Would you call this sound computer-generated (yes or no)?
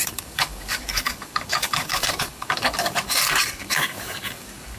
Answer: yes